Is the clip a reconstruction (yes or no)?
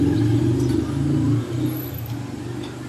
no